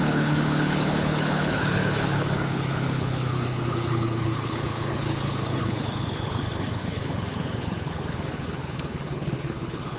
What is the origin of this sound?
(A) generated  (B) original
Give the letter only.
A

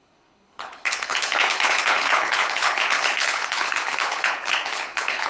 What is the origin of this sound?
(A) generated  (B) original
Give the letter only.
A